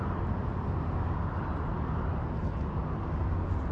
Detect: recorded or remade recorded